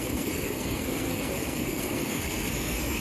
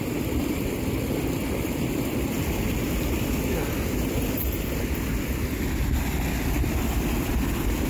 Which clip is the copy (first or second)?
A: first